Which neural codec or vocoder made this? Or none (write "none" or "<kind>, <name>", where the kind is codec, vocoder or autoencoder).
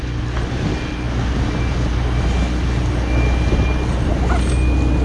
none